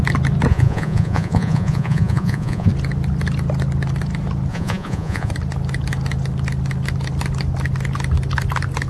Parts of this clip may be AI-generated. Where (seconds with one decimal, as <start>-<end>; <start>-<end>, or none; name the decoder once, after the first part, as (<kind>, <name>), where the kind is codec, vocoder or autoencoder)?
0.5-2.7 (vocoder, Vocos); 4.5-5.3